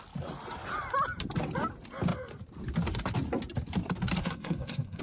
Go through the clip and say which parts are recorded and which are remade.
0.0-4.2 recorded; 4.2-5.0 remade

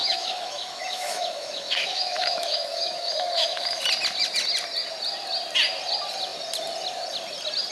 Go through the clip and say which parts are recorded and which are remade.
0.0-3.8 remade; 3.8-7.7 recorded

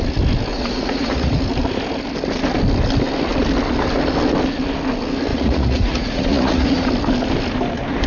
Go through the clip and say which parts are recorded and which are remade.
0.0-0.5 recorded; 0.5-1.4 remade; 1.4-5.3 recorded; 5.3-6.9 remade; 6.9-8.1 recorded

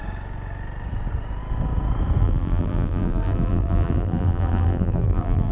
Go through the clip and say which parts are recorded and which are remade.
0.0-2.2 recorded; 2.2-5.5 remade

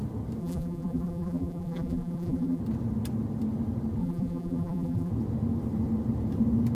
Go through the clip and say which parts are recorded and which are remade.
0.0-0.4 recorded; 0.4-2.6 remade; 2.6-4.0 recorded; 4.0-5.1 remade; 5.1-6.7 recorded

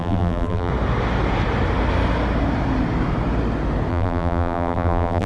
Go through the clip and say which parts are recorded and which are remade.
0.0-0.7 remade; 0.7-3.9 recorded; 3.9-5.3 remade

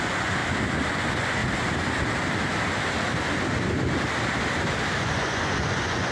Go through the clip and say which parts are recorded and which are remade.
0.0-0.4 remade; 0.4-0.9 recorded; 0.9-1.4 remade; 1.4-5.0 recorded; 5.0-6.1 remade

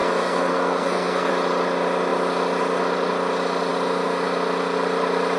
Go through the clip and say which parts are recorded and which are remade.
0.0-1.3 remade; 1.3-5.4 recorded